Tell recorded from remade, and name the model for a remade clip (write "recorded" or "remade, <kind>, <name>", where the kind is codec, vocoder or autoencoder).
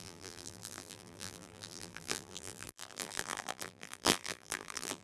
remade, vocoder, BigVGAN v2